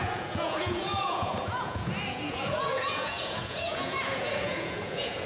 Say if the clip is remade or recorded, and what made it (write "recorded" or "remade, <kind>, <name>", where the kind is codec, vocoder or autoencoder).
remade, vocoder, Vocos